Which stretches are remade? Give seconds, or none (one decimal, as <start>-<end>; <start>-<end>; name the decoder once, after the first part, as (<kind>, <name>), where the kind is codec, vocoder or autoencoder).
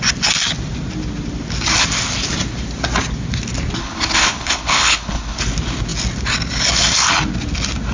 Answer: 3.8-5.4 (codec, HILCodec)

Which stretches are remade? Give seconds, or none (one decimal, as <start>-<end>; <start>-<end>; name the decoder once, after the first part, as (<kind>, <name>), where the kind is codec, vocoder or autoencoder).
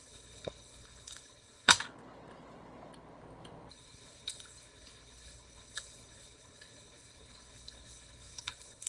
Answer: 0.0-1.7 (codec, HILCodec); 3.7-8.9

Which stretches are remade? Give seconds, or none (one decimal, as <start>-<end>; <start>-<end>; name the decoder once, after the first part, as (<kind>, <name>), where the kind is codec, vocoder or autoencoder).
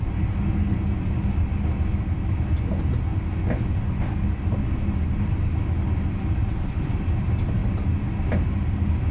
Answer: none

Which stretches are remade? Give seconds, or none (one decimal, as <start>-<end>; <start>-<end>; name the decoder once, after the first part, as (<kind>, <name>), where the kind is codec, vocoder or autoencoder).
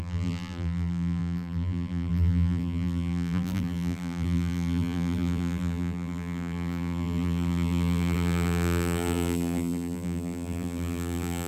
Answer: 0.0-11.5 (vocoder, BigVGAN v2)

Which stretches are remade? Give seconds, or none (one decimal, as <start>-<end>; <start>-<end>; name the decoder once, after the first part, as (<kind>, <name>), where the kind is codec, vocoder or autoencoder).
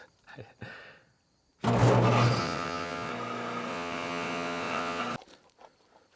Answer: 2.4-3.1 (vocoder, WaveNeXt); 3.7-5.0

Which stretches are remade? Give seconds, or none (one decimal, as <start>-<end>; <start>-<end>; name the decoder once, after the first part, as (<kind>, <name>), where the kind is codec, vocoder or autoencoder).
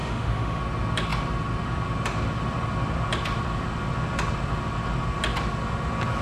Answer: 0.0-0.6 (autoencoder, DAC-VAE)